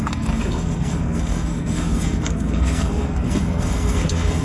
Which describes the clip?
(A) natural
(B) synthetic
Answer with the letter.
B